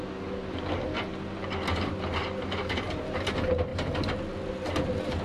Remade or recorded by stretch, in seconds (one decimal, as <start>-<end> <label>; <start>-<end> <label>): 0.0-5.2 recorded